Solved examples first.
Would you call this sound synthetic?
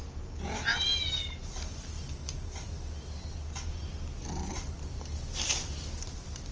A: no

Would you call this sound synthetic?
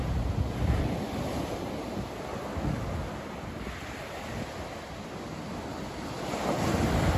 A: no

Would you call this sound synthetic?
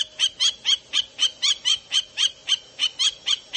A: no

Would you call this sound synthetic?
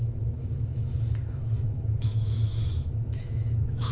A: yes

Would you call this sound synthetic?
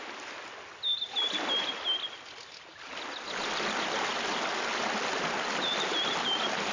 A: no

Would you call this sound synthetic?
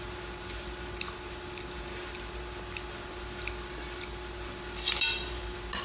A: no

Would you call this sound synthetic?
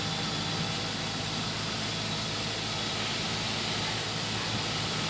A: no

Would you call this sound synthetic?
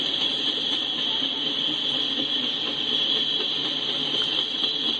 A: no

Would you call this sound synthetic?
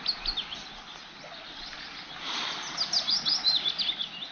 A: no